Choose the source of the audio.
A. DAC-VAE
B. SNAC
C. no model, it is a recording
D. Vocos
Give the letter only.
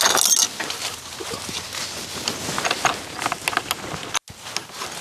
C